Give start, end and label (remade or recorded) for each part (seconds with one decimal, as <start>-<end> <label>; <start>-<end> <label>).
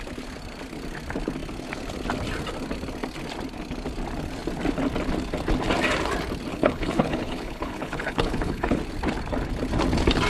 0.0-6.5 recorded; 6.5-8.8 remade; 8.8-10.3 recorded